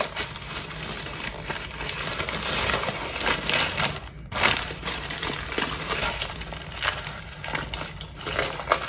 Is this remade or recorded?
recorded